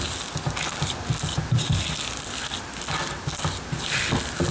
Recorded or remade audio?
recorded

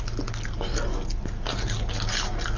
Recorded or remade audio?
recorded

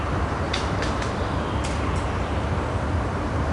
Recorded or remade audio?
recorded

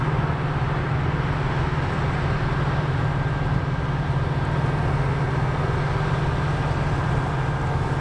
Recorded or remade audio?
recorded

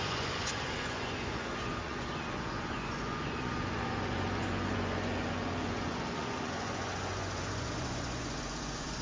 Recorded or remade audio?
remade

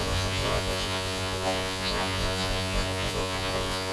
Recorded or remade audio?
remade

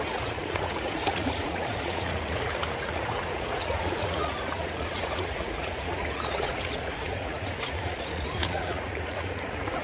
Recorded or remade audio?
remade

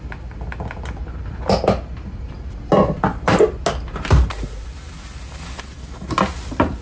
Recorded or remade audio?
recorded